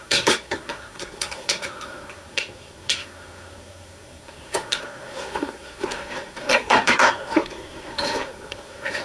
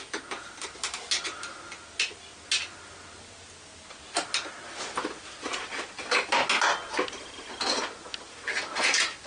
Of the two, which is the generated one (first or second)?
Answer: first